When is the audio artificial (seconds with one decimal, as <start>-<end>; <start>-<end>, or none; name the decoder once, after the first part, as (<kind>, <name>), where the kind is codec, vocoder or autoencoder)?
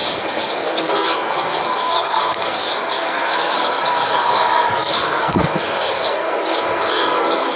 0.0-7.6 (codec, SNAC)